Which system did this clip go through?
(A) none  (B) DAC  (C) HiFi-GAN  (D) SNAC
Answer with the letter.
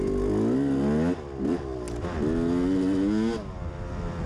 A